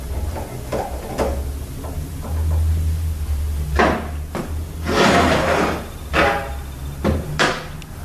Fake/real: real